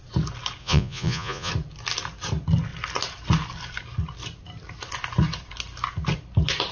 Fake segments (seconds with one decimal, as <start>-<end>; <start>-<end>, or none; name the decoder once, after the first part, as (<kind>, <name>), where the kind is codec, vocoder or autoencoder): 0.6-1.5 (vocoder, Vocos)